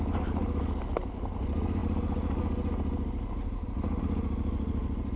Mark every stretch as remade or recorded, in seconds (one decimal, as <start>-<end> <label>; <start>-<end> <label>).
0.0-5.2 recorded

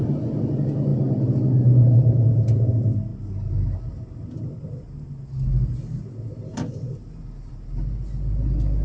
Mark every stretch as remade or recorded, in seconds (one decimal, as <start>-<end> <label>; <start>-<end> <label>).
0.0-8.8 recorded